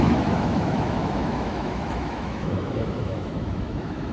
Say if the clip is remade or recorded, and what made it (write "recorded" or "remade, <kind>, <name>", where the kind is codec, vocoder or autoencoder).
remade, autoencoder, DAC-VAE